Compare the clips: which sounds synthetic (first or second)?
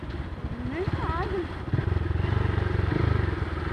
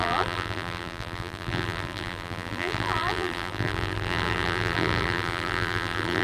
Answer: second